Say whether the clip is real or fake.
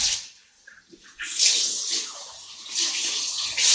real